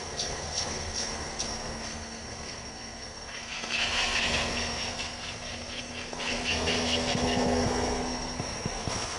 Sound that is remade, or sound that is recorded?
remade